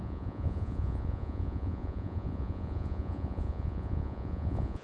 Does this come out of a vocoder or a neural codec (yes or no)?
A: yes